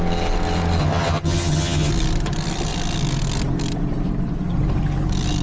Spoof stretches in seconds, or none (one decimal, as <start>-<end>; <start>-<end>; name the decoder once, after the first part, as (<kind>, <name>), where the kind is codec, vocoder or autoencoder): 0.8-1.9 (vocoder, HiFi-GAN)